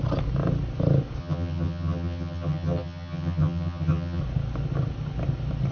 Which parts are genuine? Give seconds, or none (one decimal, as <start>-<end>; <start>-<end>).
0.0-1.2; 4.2-5.7